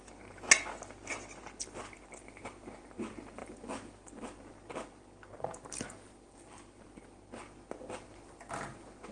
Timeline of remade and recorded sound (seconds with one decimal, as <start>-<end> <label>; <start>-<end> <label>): 0.0-9.1 recorded